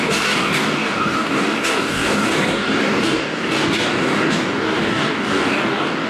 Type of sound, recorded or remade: remade